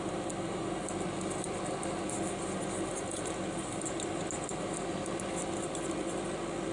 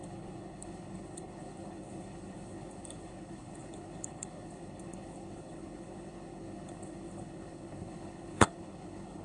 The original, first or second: first